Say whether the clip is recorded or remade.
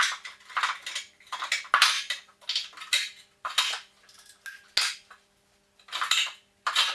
recorded